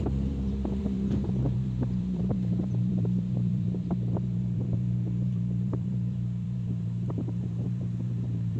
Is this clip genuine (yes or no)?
no